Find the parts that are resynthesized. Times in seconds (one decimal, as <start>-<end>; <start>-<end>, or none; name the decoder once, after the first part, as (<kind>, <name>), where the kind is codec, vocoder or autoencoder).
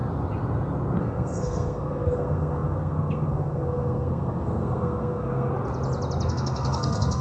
1.0-5.5 (codec, SNAC); 6.3-7.2